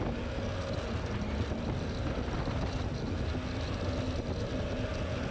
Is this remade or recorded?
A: recorded